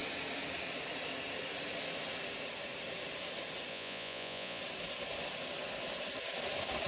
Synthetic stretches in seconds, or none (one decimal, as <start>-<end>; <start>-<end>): 3.7-4.6